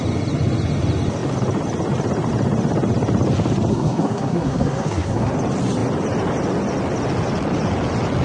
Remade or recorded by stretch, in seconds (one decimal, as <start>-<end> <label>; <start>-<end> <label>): 0.0-3.7 recorded; 3.7-5.3 remade; 5.3-8.2 recorded